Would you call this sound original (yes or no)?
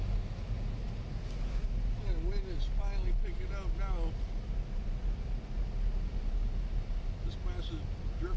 yes